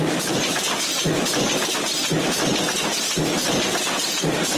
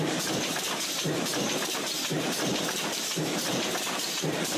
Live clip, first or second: first